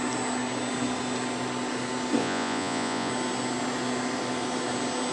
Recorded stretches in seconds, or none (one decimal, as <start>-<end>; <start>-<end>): 0.0-2.2; 3.1-5.1